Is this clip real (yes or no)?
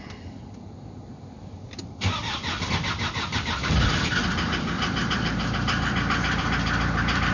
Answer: no